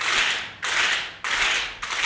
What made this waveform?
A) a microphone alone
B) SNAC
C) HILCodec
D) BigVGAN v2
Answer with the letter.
A